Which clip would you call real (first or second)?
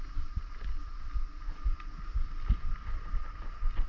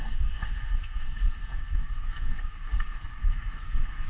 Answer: first